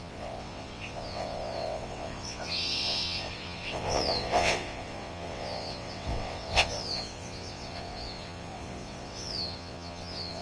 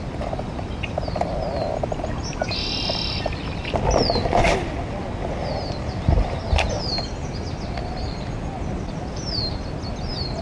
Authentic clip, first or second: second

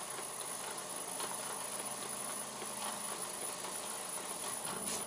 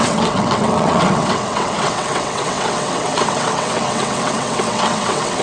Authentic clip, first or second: first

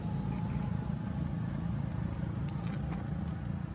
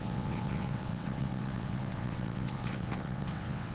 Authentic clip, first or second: first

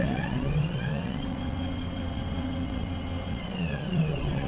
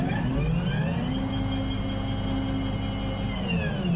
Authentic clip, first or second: second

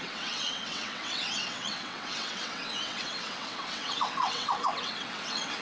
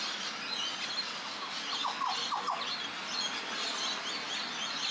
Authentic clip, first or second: second